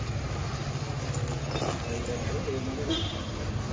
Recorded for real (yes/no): yes